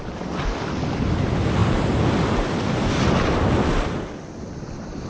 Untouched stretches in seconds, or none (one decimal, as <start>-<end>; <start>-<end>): 0.0-5.1